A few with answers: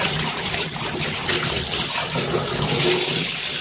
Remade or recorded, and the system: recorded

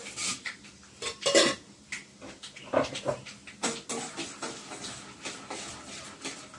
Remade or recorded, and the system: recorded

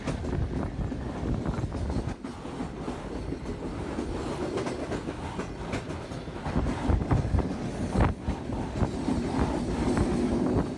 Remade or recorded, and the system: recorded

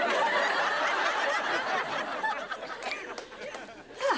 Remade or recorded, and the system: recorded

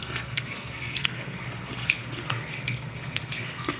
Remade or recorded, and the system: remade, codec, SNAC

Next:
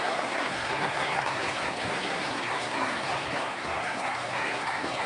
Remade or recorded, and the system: remade, codec, SNAC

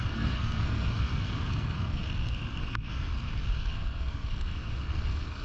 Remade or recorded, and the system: remade, codec, SNAC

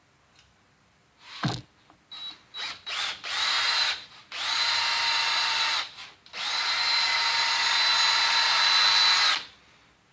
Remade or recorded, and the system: recorded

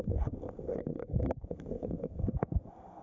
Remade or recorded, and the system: remade, codec, SNAC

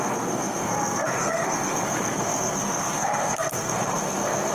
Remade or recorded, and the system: remade, codec, SNAC